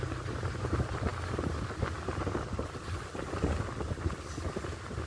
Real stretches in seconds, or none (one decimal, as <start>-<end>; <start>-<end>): 0.0-5.1